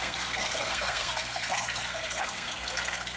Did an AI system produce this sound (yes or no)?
yes